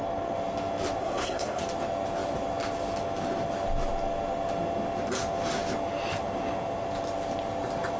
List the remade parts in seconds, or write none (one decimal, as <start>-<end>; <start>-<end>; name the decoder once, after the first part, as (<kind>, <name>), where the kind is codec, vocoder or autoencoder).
1.0-1.6 (codec, SNAC)